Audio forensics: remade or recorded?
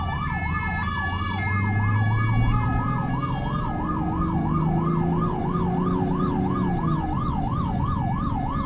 recorded